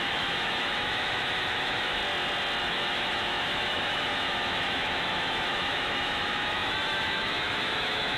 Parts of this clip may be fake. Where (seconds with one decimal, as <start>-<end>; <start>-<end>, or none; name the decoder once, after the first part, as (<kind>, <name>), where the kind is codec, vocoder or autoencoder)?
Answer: 0.0-2.0 (autoencoder, DAC-VAE); 2.6-8.2